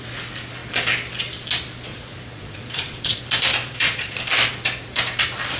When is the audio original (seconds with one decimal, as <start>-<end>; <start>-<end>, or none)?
0.0-1.9; 3.2-3.6; 4.2-5.6

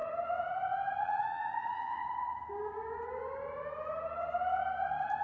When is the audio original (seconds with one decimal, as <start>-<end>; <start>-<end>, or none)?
0.0-1.0; 2.0-5.2